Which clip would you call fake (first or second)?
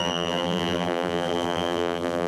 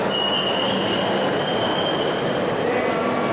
first